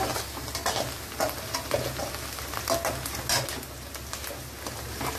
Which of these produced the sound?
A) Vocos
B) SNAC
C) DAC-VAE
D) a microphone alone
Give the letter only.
D